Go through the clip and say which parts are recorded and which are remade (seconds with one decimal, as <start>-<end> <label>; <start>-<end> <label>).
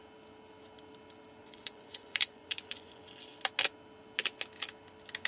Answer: 0.0-1.4 recorded; 1.4-3.0 remade; 3.0-5.3 recorded